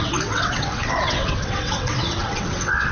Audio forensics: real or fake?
fake